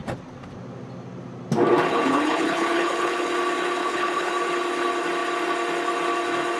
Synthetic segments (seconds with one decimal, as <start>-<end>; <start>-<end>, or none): 1.8-3.3; 3.8-4.3